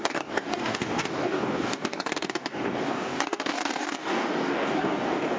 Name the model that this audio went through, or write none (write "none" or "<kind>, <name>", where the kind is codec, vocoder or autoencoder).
codec, DAC